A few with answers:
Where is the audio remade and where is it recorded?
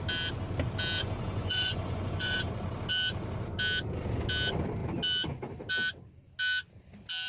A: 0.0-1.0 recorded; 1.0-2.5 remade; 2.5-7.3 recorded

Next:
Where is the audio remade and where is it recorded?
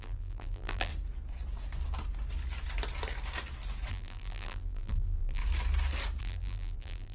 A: 0.0-0.9 remade; 0.9-3.9 recorded; 3.9-5.4 remade; 5.4-6.2 recorded; 6.2-7.1 remade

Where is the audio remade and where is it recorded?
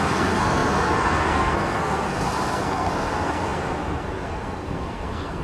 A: 0.0-5.4 remade